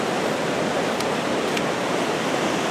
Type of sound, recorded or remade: recorded